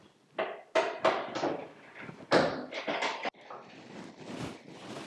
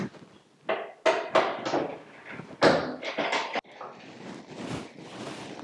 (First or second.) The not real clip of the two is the first